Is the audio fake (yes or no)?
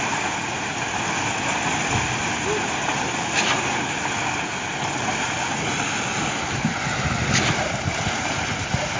no